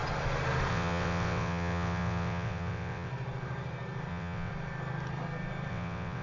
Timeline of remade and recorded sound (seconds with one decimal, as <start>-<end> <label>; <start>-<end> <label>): 0.0-0.7 recorded; 0.7-3.1 remade; 3.1-4.1 recorded; 4.1-4.5 remade; 4.5-5.7 recorded; 5.7-6.2 remade